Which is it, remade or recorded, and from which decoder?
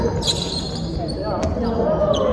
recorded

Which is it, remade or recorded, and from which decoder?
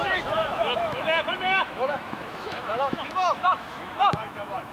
remade, autoencoder, DAC-VAE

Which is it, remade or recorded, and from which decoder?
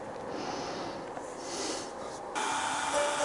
recorded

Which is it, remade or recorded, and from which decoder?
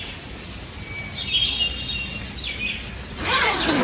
recorded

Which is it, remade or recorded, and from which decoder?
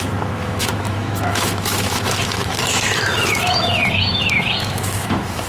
remade, autoencoder, DAC-VAE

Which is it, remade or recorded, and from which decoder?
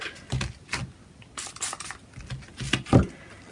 recorded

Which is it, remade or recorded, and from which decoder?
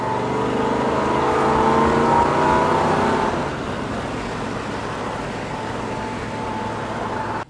recorded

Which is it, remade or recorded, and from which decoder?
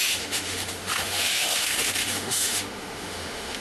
remade, autoencoder, DAC-VAE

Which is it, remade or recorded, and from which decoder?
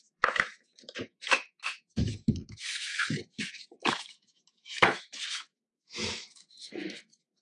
remade, autoencoder, DAC-VAE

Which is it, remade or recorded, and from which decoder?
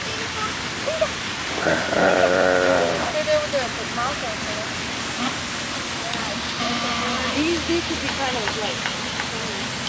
recorded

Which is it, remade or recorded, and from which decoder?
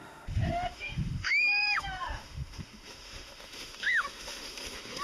remade, autoencoder, DAC-VAE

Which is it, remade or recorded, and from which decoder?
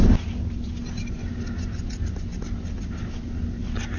recorded